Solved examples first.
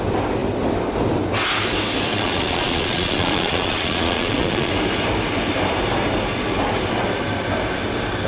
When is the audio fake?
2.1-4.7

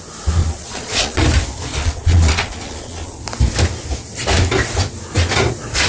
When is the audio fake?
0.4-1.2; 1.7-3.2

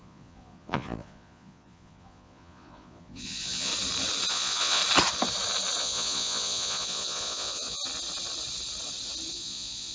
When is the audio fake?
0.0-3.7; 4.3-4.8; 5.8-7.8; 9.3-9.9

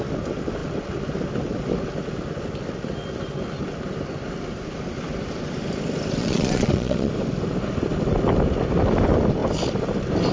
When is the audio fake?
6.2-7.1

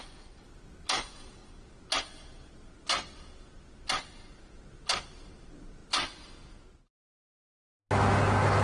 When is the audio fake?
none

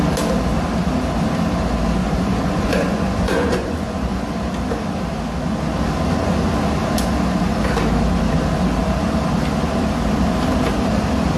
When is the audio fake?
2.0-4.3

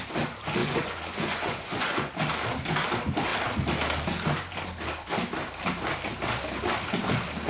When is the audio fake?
0.6-2.1

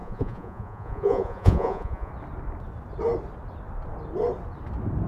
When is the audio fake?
0.0-2.1